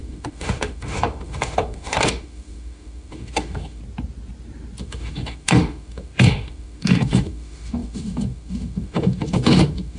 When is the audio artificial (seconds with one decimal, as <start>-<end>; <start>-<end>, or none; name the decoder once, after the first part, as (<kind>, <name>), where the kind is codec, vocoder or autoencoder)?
0.0-3.8 (autoencoder, DAC-VAE); 4.8-10.0